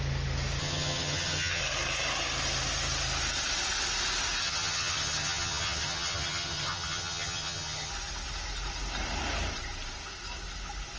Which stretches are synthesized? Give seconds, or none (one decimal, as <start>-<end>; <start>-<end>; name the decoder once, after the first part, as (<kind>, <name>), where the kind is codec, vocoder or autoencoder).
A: 0.6-1.6 (vocoder, HiFi-GAN); 4.4-7.9